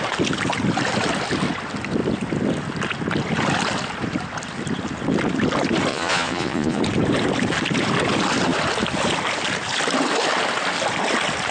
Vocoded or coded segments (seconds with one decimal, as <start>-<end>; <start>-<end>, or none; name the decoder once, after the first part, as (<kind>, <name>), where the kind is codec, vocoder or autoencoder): 5.9-6.8 (vocoder, Vocos)